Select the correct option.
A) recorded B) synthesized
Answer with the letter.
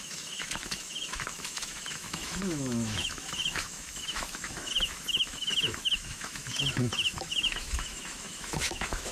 B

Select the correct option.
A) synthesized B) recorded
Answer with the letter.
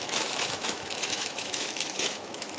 A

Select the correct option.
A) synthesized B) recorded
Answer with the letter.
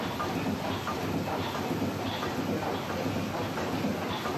B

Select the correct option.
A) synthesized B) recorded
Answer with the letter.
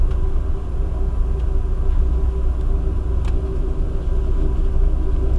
B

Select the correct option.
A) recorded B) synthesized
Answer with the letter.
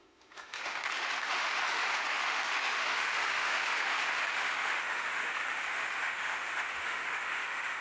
B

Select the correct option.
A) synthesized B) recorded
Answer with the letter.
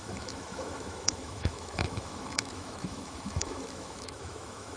A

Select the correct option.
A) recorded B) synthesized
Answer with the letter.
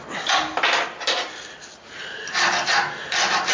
A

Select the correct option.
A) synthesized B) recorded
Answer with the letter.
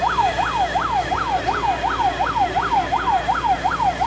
B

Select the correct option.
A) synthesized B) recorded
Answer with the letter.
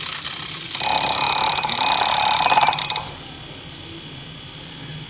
B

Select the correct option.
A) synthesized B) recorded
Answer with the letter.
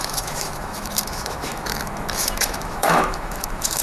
A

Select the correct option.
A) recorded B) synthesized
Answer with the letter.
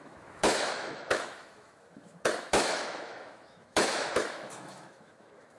B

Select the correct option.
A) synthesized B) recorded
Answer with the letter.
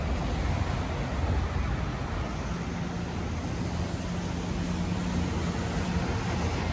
B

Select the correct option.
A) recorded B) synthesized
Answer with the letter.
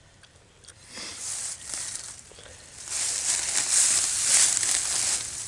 A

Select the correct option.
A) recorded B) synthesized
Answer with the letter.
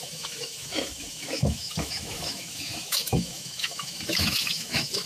B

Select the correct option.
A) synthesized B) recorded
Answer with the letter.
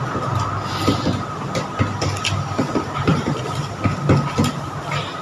B